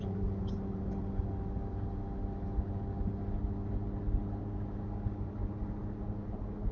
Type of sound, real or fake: real